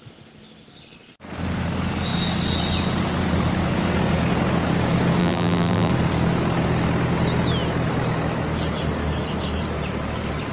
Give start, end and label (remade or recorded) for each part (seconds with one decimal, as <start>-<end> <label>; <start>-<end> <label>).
0.0-5.2 recorded; 5.2-5.9 remade; 5.9-10.5 recorded